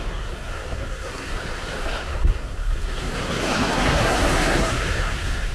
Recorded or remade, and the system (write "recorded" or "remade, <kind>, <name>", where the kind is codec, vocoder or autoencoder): remade, codec, SNAC